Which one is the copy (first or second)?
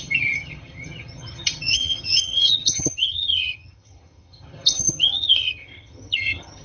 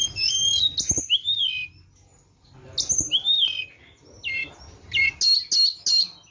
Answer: first